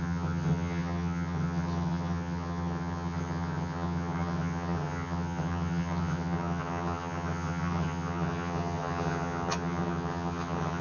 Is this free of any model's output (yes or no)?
no